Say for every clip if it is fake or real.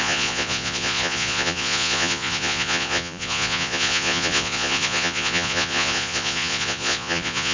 fake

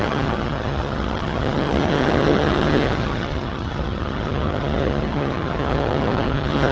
fake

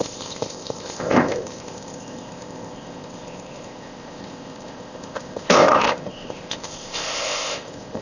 fake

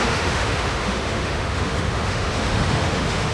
fake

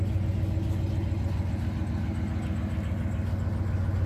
real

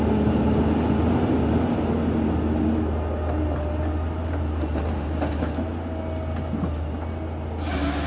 real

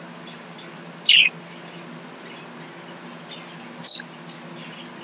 real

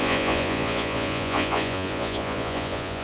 fake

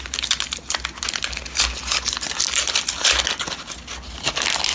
real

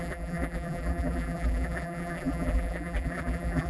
fake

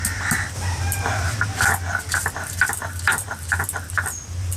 real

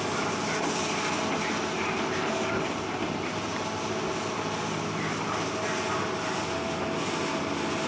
real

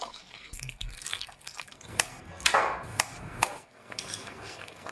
fake